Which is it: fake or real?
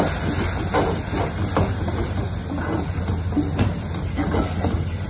real